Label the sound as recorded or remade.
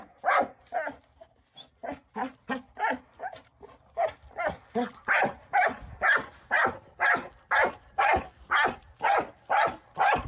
recorded